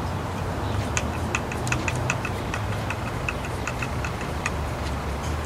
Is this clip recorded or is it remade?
remade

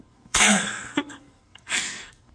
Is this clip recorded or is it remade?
remade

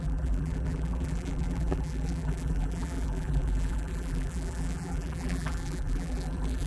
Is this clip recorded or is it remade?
remade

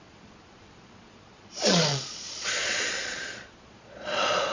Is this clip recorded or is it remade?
remade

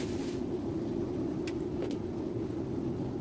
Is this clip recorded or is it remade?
recorded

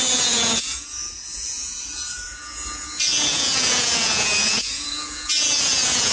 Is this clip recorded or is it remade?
remade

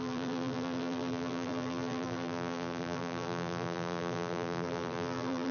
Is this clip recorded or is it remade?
remade